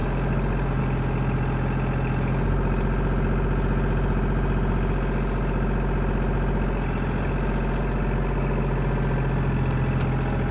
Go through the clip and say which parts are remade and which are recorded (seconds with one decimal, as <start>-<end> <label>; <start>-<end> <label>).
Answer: 0.0-10.5 recorded